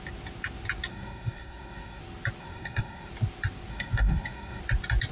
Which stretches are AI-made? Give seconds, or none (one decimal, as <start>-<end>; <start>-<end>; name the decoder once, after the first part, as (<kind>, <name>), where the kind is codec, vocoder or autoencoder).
0.9-2.0 (codec, SNAC); 2.4-3.1; 3.7-4.6